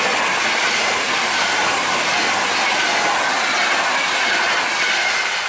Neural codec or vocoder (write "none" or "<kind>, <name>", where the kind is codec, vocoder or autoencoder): none